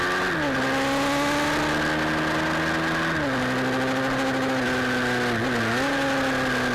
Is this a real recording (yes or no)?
yes